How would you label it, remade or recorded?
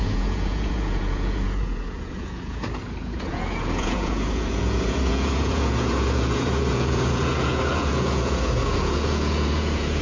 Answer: remade